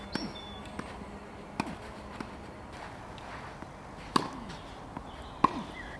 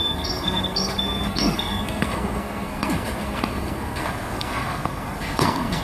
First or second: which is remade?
second